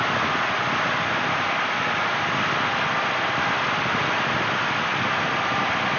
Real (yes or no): yes